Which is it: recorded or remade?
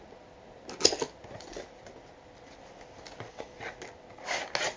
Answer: recorded